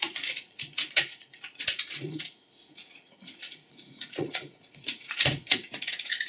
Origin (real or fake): fake